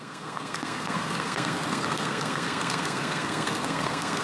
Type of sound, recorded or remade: remade